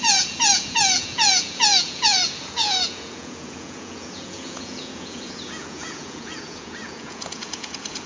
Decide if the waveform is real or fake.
fake